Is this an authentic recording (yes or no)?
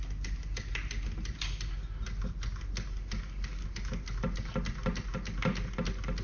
yes